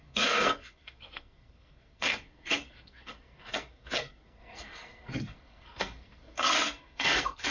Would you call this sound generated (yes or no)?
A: yes